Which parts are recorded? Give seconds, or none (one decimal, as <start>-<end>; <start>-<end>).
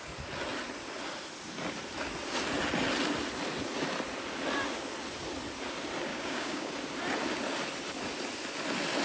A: 0.0-6.1; 6.7-9.0